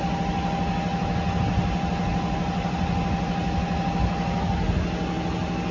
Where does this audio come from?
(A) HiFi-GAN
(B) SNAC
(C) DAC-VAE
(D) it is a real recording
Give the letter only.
D